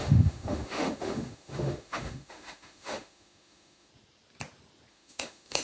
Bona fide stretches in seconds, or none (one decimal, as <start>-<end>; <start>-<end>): 3.9-4.9